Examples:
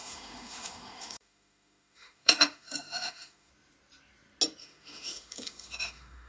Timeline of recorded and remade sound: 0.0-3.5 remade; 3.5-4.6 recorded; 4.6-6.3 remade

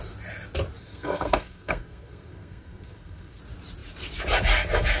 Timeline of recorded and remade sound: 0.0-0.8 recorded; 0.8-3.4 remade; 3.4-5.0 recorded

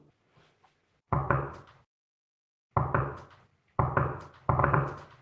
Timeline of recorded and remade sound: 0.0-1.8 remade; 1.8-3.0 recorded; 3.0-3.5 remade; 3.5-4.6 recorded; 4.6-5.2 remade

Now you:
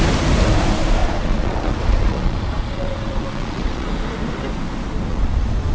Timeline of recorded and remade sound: 0.0-1.0 recorded; 1.0-3.9 remade; 3.9-5.1 recorded; 5.1-5.7 remade

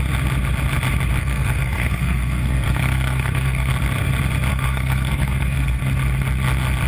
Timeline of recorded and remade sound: 0.0-1.2 recorded; 1.2-3.7 remade; 3.7-4.5 recorded; 4.5-5.8 remade; 5.8-6.9 recorded

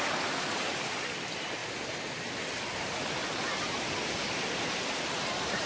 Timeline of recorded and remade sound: 0.0-1.6 recorded; 1.6-2.3 remade; 2.3-3.2 recorded; 3.2-5.7 remade

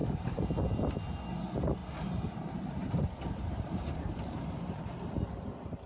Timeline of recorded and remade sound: 0.0-0.5 remade; 0.5-1.8 recorded; 1.8-4.4 remade; 4.4-5.9 recorded